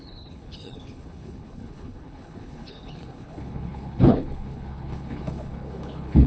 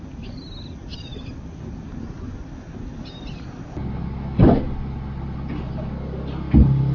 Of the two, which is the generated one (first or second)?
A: first